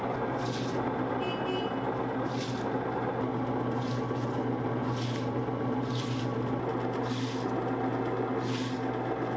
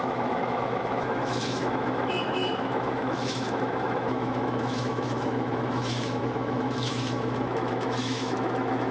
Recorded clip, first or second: first